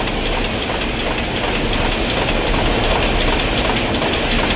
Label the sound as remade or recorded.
recorded